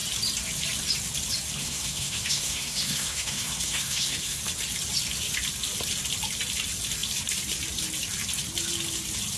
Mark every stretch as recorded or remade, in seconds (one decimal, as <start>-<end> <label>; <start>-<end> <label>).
0.0-1.6 recorded; 1.6-4.4 remade; 4.4-9.4 recorded